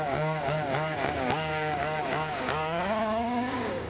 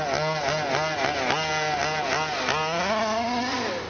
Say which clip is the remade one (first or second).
first